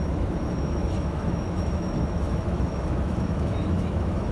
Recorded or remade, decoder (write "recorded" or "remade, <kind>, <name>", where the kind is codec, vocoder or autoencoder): remade, autoencoder, DAC-VAE